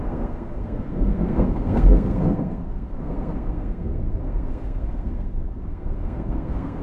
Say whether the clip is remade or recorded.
remade